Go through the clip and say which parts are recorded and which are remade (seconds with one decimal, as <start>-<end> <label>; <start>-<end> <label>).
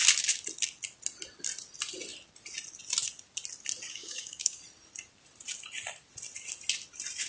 0.0-3.9 recorded; 3.9-4.6 remade; 4.6-7.3 recorded